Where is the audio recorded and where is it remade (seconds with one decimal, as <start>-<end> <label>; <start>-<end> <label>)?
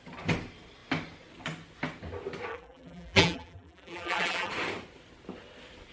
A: 0.0-2.5 recorded; 2.5-4.5 remade; 4.5-5.9 recorded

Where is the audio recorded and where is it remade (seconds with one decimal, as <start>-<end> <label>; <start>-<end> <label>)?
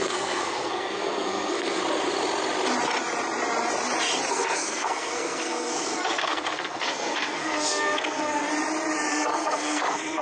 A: 0.0-1.8 remade; 1.8-4.3 recorded; 4.3-8.4 remade; 8.4-9.1 recorded; 9.1-10.2 remade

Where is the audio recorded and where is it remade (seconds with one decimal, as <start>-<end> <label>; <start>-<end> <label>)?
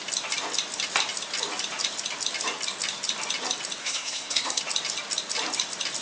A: 0.0-3.8 recorded; 3.8-4.6 remade; 4.6-6.0 recorded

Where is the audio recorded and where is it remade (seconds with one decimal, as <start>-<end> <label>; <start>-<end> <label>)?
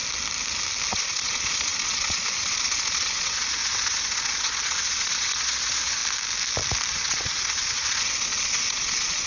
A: 0.0-0.9 recorded; 0.9-6.0 remade; 6.0-6.9 recorded; 6.9-9.3 remade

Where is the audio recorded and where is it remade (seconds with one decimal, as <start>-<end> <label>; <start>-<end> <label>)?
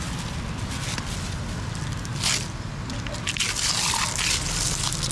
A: 0.0-5.1 recorded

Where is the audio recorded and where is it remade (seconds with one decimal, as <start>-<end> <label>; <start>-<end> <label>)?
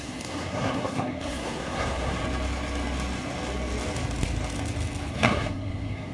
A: 0.0-2.2 remade; 2.2-5.1 recorded; 5.1-6.1 remade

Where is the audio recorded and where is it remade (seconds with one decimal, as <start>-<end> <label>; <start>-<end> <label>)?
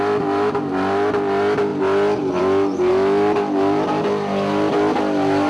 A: 0.0-1.7 recorded; 1.7-2.4 remade; 2.4-2.9 recorded; 2.9-5.5 remade